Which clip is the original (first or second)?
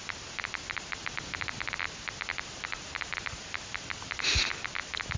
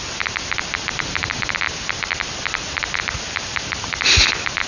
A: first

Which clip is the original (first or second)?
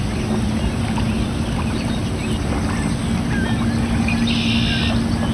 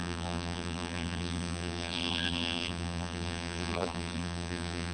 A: first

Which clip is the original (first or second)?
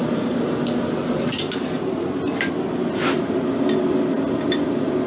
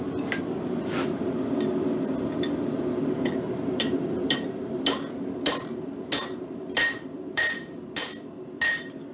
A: first